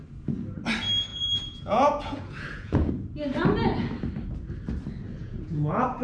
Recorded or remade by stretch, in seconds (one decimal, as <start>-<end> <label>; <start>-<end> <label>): 0.0-1.1 recorded; 1.1-2.9 remade; 2.9-5.2 recorded; 5.2-6.0 remade